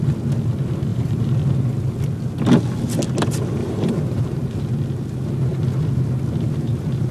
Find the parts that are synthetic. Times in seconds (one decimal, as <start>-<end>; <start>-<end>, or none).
0.9-1.4; 3.6-4.2